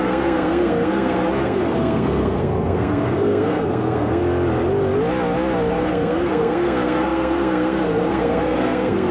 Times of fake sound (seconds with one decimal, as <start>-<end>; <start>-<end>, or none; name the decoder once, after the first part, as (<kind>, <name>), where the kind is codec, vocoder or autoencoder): 0.0-4.2 (codec, SNAC); 5.7-9.1